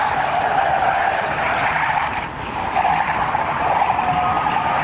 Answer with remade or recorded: recorded